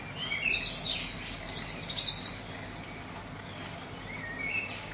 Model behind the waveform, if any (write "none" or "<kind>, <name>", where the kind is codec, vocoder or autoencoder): vocoder, BigVGAN v2